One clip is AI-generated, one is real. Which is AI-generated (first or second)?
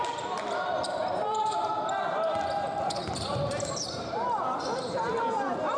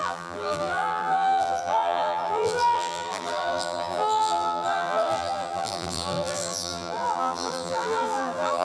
second